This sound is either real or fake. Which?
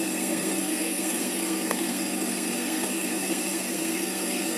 fake